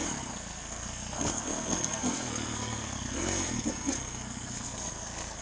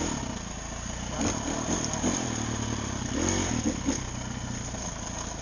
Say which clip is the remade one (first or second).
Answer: first